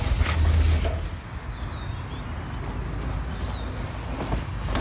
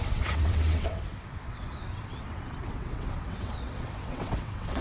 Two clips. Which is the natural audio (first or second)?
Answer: first